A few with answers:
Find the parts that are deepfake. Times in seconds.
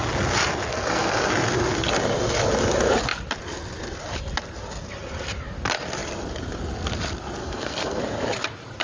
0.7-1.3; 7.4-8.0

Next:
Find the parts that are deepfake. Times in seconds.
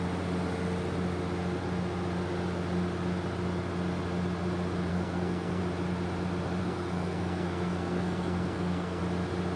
4.9-5.6; 6.6-9.0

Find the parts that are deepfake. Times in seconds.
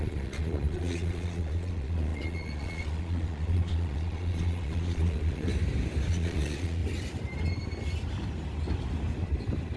0.0-5.5; 6.1-6.8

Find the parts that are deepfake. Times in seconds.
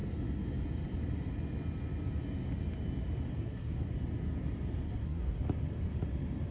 3.3-3.9; 4.8-5.4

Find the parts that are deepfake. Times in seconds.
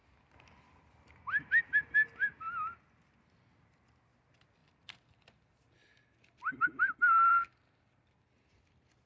4.6-8.6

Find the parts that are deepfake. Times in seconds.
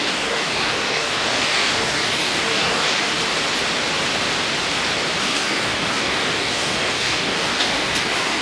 0.0-3.1; 5.2-8.4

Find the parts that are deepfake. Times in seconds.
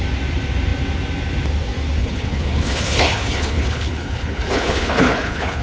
2.0-5.6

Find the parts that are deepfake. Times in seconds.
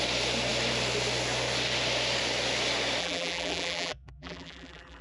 3.0-5.0